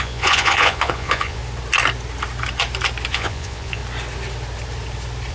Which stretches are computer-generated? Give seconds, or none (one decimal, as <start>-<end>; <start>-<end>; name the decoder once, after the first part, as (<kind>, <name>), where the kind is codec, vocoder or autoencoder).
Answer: 0.0-1.4 (vocoder, Vocos); 3.1-3.8